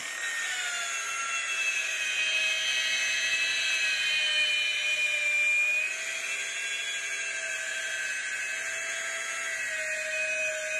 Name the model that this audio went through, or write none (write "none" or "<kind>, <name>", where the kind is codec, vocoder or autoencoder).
none